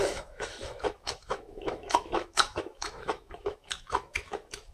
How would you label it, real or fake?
fake